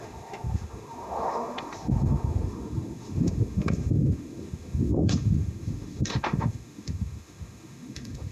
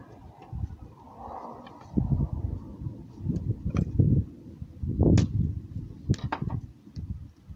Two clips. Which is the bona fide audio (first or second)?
second